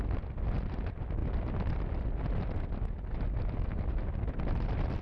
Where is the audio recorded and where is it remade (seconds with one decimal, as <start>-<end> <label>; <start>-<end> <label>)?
0.0-5.0 recorded